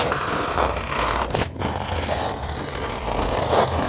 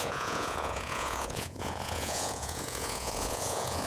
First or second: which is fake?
second